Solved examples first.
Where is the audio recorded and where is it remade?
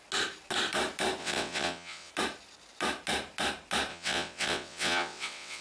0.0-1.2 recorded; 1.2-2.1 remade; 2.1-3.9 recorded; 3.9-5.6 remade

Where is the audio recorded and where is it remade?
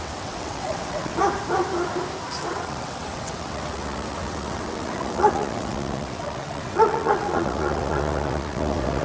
0.0-1.2 remade; 1.2-2.5 recorded; 2.5-9.0 remade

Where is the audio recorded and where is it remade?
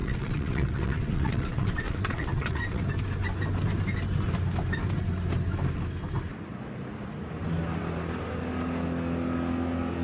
0.0-2.8 remade; 2.8-10.0 recorded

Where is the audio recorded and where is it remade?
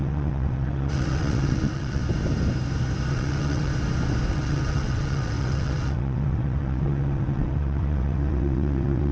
0.0-2.0 remade; 2.0-3.1 recorded; 3.1-3.7 remade; 3.7-4.3 recorded; 4.3-9.1 remade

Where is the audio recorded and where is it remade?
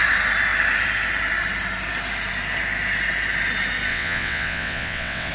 0.0-3.9 recorded; 3.9-5.3 remade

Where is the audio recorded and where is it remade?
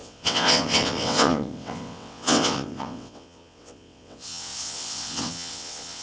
0.0-6.0 remade